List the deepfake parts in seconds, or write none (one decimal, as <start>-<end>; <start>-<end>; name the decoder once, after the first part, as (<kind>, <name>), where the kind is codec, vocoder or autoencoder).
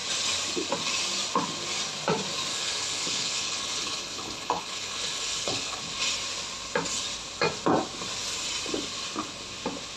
2.5-5.8 (codec, HILCodec)